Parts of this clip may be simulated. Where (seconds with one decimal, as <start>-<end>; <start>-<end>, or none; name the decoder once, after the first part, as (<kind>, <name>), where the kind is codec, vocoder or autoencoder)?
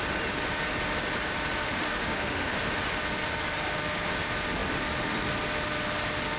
1.6-2.8 (autoencoder, DAC-VAE)